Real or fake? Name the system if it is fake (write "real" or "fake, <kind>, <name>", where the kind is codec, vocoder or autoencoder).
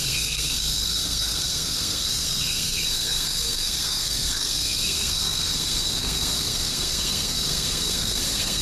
fake, codec, SNAC